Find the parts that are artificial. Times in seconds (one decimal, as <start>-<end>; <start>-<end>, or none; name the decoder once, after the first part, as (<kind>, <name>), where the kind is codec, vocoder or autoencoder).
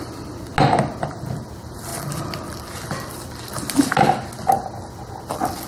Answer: none